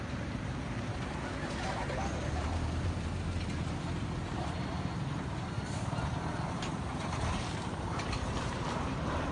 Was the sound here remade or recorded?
remade